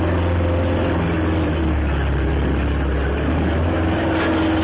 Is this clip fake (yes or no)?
no